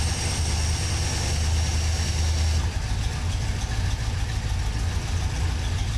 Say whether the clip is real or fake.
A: real